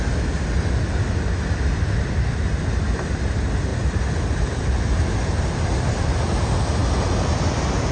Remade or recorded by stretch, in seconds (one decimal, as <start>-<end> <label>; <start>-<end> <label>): 0.0-7.9 recorded